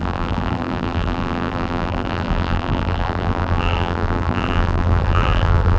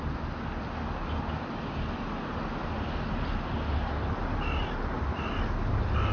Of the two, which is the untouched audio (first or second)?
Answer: second